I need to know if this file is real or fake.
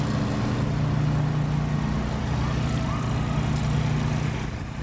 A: real